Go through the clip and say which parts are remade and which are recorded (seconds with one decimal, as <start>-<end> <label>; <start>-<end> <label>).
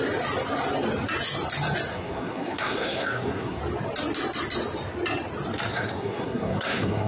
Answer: 0.0-1.9 recorded; 1.9-3.6 remade; 3.6-5.7 recorded; 5.7-7.1 remade